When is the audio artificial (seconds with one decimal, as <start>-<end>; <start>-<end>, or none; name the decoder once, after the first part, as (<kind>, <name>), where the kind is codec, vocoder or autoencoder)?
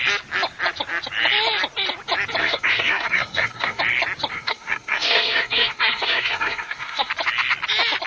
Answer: 2.4-3.8 (codec, SNAC); 4.3-7.1